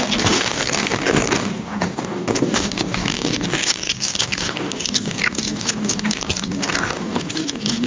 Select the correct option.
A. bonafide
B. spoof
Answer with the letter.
B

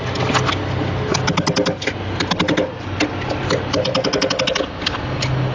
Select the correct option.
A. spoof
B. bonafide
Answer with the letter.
B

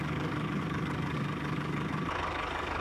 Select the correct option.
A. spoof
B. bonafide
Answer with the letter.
A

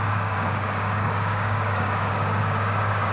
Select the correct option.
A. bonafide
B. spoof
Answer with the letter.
B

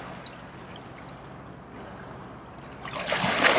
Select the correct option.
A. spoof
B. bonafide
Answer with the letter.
B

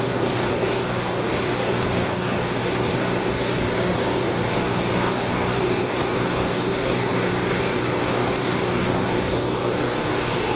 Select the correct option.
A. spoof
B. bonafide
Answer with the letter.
A